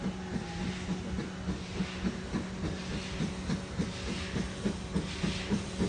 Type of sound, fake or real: real